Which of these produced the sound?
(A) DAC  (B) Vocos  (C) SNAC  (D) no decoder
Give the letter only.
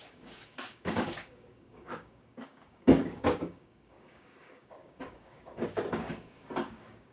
A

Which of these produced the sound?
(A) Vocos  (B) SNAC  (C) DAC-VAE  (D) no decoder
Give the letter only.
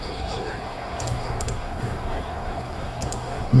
B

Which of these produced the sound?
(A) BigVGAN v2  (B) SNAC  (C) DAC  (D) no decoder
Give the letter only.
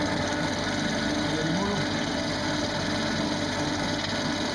D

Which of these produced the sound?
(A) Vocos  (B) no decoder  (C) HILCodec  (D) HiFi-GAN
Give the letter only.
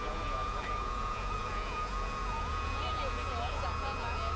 A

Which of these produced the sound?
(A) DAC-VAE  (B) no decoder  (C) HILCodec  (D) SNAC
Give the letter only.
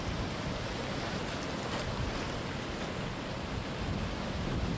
B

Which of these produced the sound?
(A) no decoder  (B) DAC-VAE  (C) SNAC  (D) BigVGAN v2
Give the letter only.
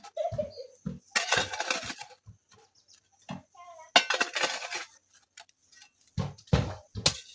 A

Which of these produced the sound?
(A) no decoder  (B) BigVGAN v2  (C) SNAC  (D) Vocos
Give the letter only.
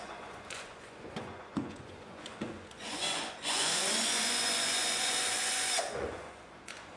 D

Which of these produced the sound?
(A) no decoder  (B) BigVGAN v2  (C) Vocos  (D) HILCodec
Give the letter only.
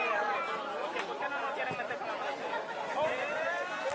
A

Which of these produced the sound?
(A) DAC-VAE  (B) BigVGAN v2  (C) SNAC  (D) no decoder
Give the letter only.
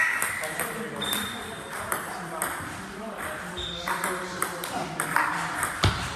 B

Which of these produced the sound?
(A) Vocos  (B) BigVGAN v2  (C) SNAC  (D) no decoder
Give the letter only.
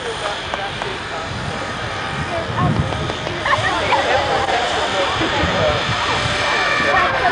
B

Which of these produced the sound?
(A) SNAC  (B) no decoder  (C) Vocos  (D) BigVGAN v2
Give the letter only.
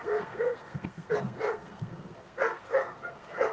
A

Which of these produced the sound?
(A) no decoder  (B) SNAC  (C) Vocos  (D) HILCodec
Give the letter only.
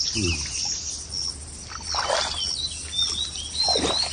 A